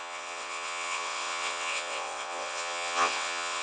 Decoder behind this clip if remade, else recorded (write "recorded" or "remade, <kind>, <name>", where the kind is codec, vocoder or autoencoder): remade, vocoder, WaveNeXt